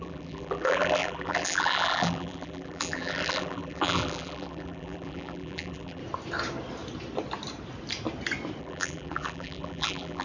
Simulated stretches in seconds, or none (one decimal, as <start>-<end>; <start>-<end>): 0.0-6.0; 8.6-10.2